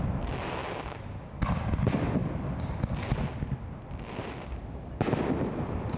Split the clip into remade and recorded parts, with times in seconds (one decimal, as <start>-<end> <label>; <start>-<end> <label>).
0.0-6.0 recorded